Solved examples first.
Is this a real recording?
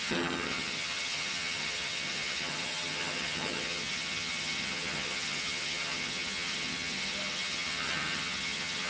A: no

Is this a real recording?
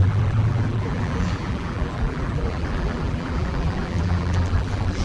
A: no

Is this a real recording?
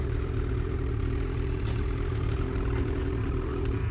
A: no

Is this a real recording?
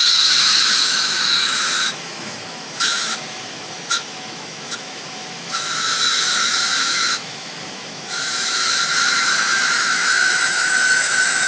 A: no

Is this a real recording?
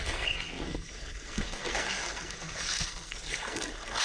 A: no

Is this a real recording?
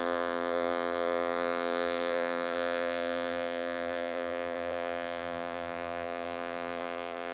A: no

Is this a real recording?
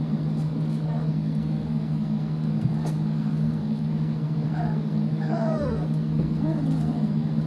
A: no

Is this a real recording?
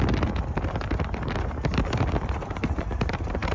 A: yes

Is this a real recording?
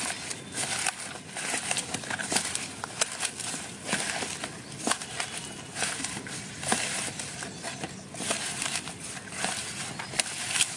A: yes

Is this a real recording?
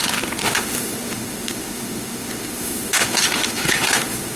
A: no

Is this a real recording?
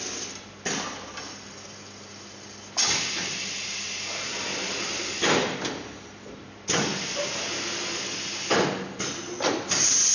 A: yes